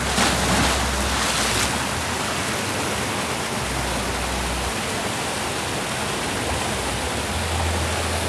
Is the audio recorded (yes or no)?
yes